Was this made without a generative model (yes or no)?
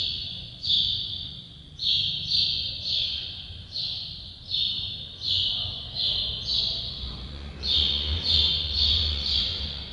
no